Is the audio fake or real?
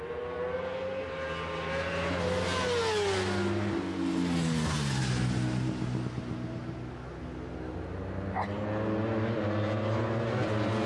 real